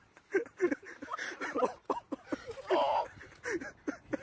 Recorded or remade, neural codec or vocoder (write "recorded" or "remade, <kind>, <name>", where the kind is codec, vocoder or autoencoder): recorded